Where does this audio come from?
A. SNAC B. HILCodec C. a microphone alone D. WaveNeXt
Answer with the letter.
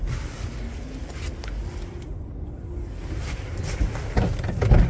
C